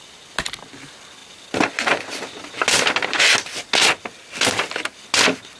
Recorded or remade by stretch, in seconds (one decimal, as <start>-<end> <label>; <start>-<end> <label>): 0.0-5.6 recorded